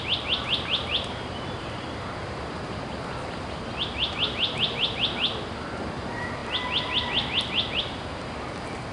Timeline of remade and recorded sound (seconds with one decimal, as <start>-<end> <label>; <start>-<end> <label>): 0.0-8.9 recorded